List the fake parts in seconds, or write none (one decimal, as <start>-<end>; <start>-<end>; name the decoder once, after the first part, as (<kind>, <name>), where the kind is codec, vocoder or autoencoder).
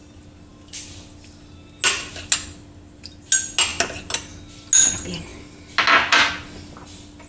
none